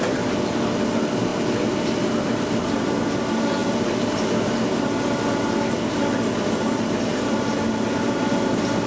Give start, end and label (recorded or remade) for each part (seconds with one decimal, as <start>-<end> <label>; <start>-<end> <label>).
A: 0.0-1.3 recorded; 1.3-2.6 remade; 2.6-3.6 recorded; 3.6-7.4 remade; 7.4-8.9 recorded